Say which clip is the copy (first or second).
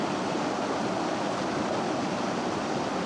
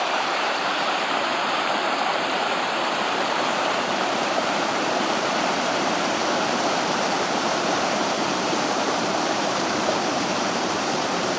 second